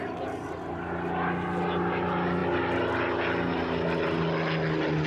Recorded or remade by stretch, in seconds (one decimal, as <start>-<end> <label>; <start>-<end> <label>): 0.0-5.1 recorded